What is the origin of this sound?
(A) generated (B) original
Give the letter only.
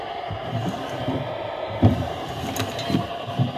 A